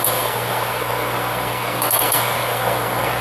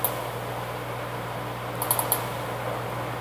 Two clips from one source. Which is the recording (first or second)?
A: second